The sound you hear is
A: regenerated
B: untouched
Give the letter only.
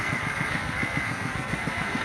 A